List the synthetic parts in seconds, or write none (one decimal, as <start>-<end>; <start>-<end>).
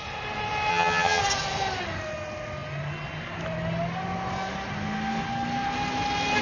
0.7-1.2